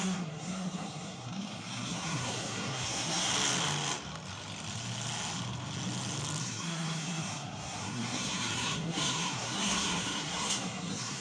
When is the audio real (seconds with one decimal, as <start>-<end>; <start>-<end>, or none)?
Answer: 3.3-6.4